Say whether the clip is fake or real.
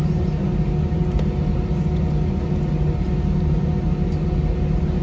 real